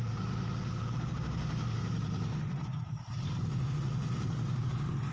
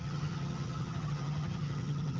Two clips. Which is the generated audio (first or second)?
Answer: second